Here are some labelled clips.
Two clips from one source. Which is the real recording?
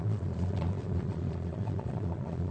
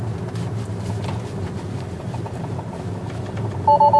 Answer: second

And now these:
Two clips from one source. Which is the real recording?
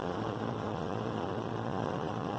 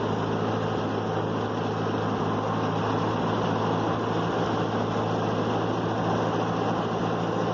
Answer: second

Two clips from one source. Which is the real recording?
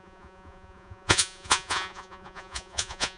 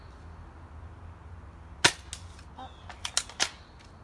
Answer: second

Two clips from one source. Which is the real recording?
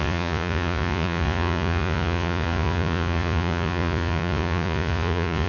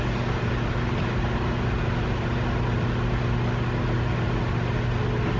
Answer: second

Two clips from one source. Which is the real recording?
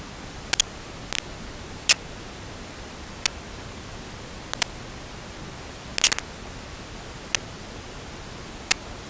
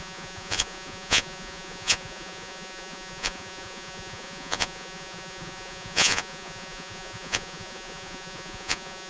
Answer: first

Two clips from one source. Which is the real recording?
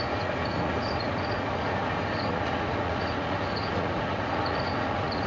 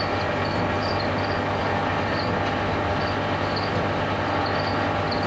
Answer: second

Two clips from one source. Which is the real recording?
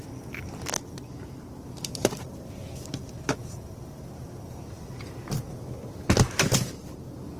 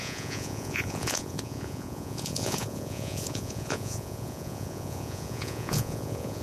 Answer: first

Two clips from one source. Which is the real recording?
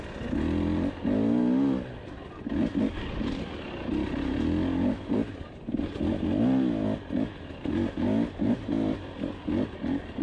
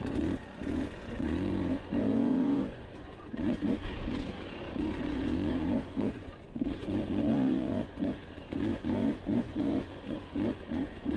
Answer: first